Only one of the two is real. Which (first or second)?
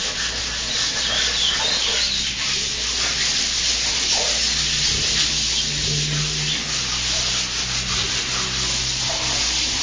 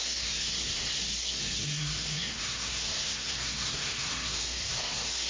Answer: first